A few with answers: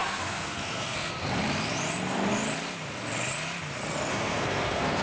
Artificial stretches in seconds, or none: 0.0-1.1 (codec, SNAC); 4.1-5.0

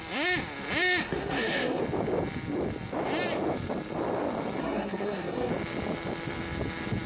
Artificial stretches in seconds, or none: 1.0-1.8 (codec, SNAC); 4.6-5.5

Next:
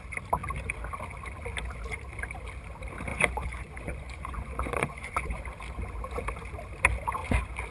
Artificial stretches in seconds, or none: 3.1-5.4 (vocoder, Vocos)

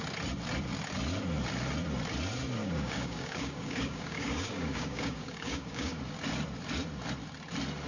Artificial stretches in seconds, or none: 2.6-6.0 (codec, DAC)

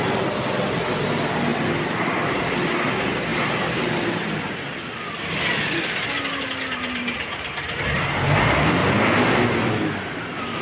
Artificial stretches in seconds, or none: 1.5-2.4 (vocoder, BigVGAN v2); 8.8-10.6

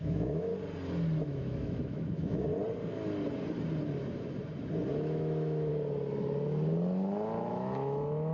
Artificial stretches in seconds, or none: 0.0-0.5 (autoencoder, DAC-VAE); 1.2-2.5; 4.9-5.7; 7.5-8.3